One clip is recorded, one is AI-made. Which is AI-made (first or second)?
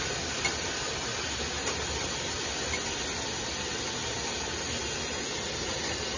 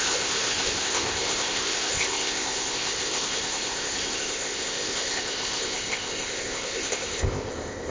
second